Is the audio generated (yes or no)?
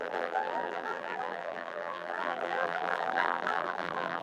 yes